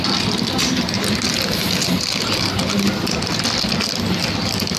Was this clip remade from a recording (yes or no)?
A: no